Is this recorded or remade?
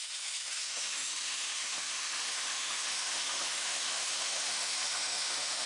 remade